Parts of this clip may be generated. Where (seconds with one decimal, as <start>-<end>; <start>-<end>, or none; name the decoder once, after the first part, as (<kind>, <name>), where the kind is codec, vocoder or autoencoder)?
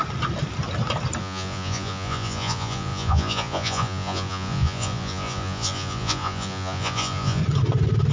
1.2-7.4 (vocoder, Vocos)